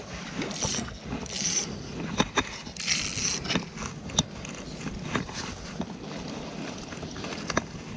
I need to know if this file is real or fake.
real